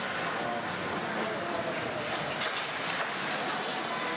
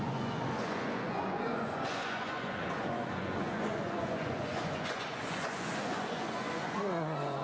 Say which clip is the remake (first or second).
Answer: second